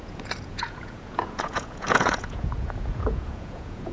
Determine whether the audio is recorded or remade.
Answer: remade